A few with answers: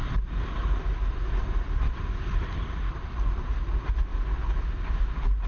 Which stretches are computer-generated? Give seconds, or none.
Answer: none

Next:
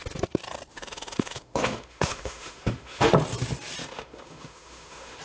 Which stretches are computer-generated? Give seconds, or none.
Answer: 0.7-3.0 (autoencoder, DAC-VAE); 3.8-5.2

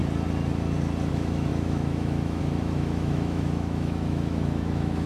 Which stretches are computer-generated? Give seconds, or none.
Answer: 1.1-5.1 (autoencoder, DAC-VAE)

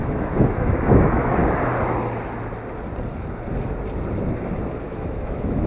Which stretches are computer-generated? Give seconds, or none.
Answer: 0.0-1.4 (autoencoder, DAC-VAE); 4.8-5.7

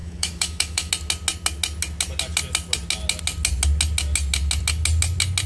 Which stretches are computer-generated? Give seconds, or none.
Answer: 0.0-0.9 (autoencoder, DAC-VAE)

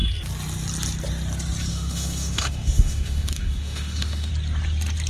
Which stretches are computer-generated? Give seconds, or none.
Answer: 1.7-4.3 (autoencoder, DAC-VAE)